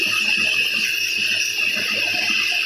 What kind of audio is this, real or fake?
real